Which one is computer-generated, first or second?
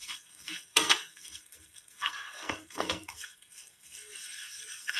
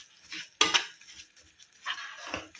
first